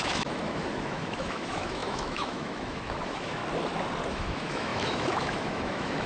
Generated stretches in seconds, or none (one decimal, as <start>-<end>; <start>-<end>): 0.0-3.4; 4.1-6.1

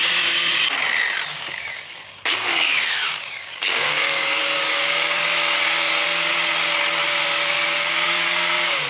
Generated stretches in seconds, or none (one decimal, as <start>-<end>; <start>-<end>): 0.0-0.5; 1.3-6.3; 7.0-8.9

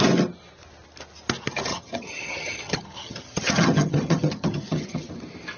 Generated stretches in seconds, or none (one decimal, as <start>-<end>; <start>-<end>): 1.7-5.1

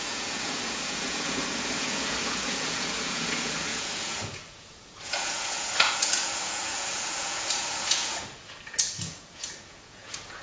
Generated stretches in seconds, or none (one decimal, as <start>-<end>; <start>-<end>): 0.0-10.4

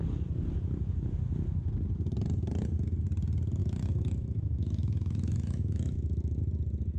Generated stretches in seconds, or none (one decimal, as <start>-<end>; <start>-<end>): 3.6-6.4

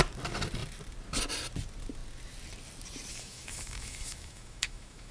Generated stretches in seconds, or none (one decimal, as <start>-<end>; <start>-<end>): 3.1-5.1